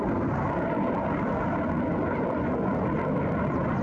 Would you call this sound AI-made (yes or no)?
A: no